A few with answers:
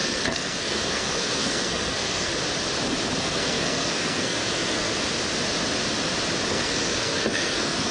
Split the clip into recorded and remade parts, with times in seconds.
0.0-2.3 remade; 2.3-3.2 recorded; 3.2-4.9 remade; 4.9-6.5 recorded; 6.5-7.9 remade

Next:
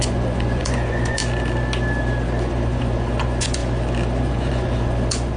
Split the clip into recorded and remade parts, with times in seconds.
0.0-1.2 remade; 1.2-2.5 recorded; 2.5-3.6 remade; 3.6-4.2 recorded; 4.2-5.4 remade